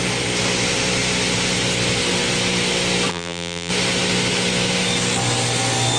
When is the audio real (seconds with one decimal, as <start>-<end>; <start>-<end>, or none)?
0.0-3.1; 3.7-6.0